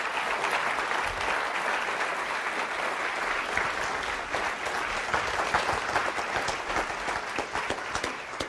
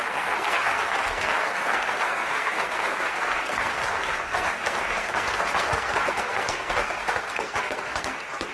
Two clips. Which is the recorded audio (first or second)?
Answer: first